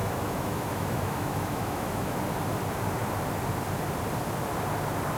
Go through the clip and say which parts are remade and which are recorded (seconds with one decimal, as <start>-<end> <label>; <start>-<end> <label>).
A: 0.0-2.2 remade; 2.2-5.2 recorded